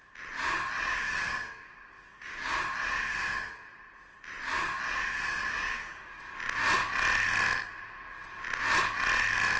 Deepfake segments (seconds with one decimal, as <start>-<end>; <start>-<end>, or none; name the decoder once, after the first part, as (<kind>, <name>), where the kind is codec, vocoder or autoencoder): 0.9-2.6 (codec, DAC); 5.3-6.2